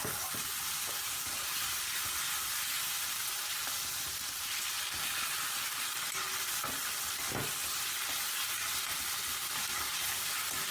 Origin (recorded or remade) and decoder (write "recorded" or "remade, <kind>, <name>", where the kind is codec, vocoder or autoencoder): remade, vocoder, BigVGAN v2